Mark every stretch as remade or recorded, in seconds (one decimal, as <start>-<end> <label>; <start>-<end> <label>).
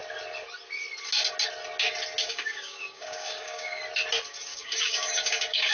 0.0-2.2 recorded; 2.2-3.8 remade; 3.8-4.5 recorded; 4.5-5.7 remade